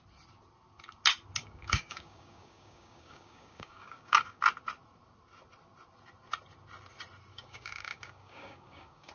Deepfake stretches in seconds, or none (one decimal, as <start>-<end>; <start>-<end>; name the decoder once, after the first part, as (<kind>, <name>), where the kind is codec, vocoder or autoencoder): 1.4-4.4 (codec, DAC); 7.3-9.1